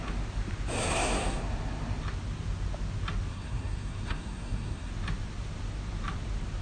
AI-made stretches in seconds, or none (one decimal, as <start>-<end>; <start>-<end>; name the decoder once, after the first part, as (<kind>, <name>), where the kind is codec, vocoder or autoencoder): 0.8-1.4 (codec, SNAC); 3.3-4.9